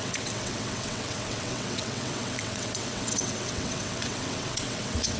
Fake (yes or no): yes